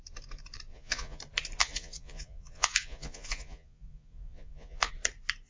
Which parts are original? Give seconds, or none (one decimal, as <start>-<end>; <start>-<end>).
0.0-0.7; 1.2-1.6; 4.9-5.5